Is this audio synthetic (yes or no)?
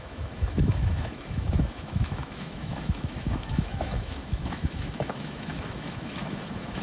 yes